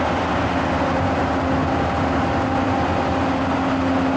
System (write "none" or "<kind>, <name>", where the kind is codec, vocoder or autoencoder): none